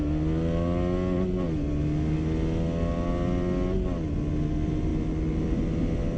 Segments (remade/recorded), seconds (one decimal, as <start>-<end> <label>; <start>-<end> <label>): 0.0-6.2 recorded